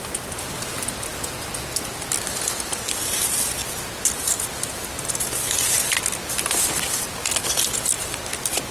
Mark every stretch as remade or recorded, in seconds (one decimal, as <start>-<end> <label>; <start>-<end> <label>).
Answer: 0.0-8.7 recorded